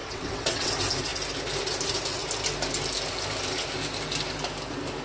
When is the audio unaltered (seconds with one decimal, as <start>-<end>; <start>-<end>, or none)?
0.7-5.0